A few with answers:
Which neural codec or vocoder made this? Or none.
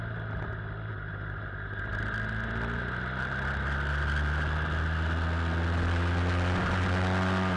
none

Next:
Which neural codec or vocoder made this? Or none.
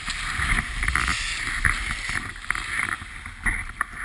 none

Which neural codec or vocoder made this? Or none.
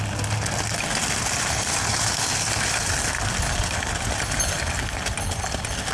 none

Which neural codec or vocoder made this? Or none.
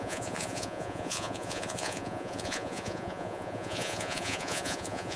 vocoder, Vocos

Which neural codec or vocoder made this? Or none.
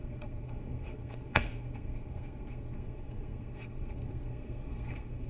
codec, SNAC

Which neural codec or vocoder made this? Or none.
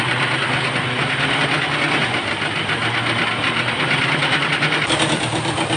vocoder, BigVGAN v2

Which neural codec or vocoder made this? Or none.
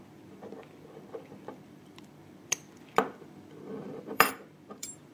vocoder, BigVGAN v2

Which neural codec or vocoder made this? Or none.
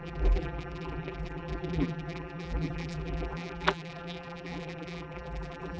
vocoder, BigVGAN v2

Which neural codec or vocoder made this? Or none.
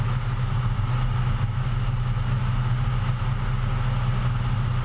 none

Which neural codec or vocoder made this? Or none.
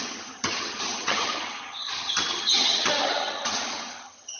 vocoder, HiFi-GAN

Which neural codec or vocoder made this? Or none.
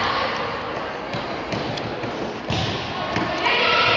none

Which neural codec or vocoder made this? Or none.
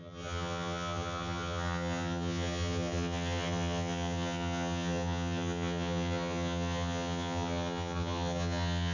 vocoder, HiFi-GAN